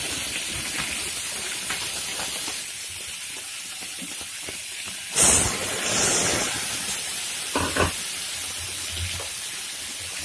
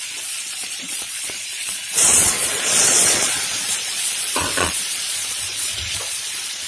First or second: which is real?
first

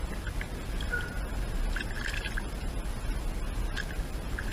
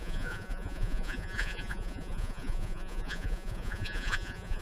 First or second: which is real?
first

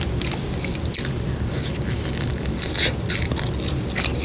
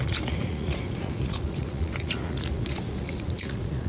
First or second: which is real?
first